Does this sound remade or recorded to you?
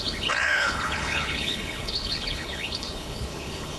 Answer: remade